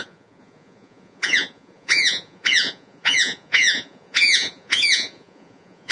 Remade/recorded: remade